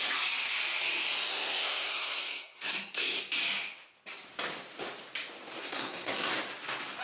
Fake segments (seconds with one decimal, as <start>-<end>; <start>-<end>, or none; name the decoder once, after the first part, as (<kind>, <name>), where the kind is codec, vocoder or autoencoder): 1.3-3.2 (codec, SNAC); 5.6-6.3